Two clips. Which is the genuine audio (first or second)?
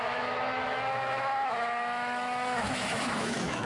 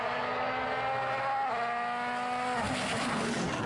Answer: second